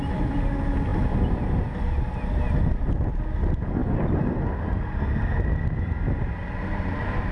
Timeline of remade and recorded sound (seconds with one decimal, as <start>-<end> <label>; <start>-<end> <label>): 0.0-7.3 recorded